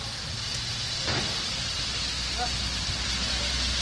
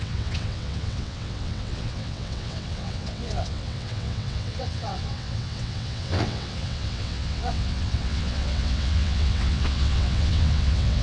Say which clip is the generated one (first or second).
second